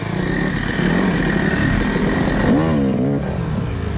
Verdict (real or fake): real